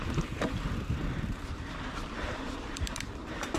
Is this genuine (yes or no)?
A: no